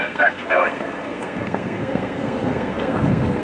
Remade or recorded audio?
remade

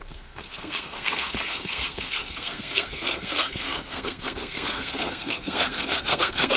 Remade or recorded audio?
remade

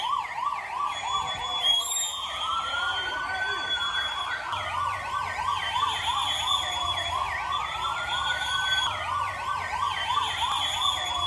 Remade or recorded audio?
recorded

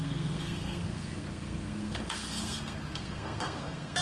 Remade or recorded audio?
remade